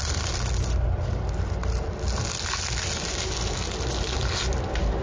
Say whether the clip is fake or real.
real